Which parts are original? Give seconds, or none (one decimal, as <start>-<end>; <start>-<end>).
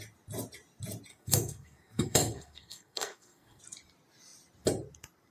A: 0.0-1.1; 3.6-5.3